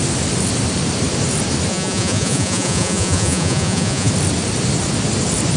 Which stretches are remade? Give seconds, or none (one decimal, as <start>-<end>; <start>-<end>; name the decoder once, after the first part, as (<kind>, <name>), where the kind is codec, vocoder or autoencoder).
1.7-4.1 (vocoder, Vocos)